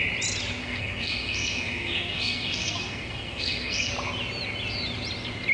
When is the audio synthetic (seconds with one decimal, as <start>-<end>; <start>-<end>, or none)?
0.6-3.9